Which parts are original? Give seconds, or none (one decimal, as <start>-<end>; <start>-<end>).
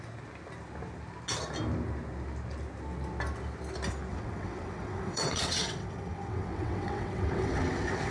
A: 0.0-4.1